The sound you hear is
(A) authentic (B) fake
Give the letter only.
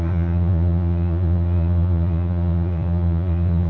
B